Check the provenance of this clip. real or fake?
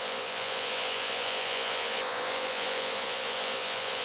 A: fake